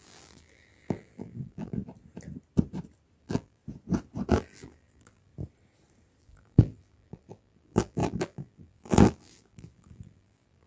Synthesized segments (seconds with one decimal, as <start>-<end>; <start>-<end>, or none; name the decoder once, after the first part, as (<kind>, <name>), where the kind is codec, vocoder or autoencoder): 0.0-1.8 (vocoder, BigVGAN v2); 3.2-3.6; 4.3-5.3; 6.2-10.7